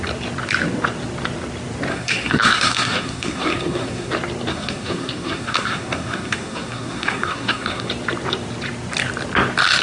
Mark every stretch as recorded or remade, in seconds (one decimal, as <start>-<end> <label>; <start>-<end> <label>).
0.0-1.9 recorded; 1.9-4.1 remade; 4.1-4.5 recorded; 4.5-7.9 remade; 7.9-9.8 recorded